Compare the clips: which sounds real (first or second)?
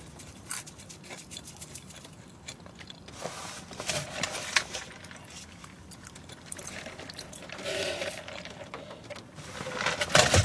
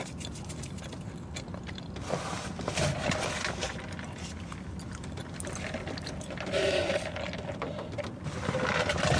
second